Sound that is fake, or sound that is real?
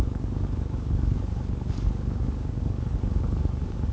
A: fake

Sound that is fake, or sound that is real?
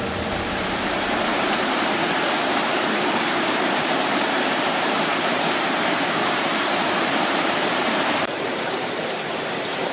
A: fake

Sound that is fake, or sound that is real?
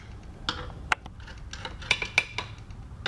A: real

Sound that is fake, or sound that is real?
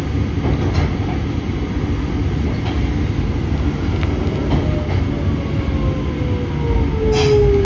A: real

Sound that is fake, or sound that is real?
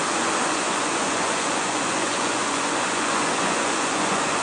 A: fake